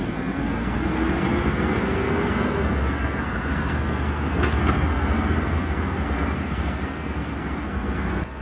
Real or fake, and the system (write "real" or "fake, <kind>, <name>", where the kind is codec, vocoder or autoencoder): fake, codec, SNAC